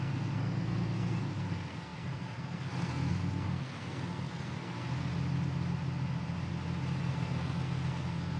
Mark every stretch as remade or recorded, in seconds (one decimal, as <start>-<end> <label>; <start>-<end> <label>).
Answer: 0.0-5.1 remade; 5.1-7.0 recorded; 7.0-8.4 remade